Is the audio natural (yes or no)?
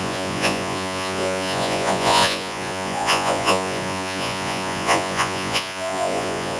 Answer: no